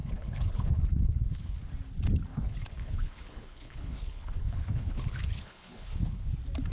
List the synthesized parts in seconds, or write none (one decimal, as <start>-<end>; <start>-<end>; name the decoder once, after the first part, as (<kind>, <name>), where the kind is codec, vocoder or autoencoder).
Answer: 0.0-1.6 (codec, HILCodec); 2.3-6.3